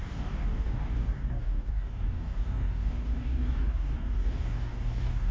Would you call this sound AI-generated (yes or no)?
yes